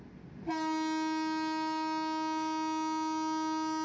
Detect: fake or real real